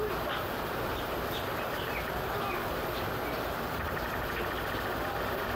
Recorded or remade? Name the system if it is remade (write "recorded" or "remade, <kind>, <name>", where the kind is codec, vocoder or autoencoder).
recorded